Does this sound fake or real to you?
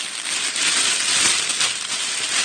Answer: real